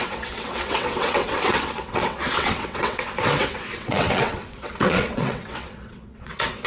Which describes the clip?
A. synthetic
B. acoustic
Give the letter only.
A